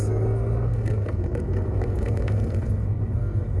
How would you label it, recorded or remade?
remade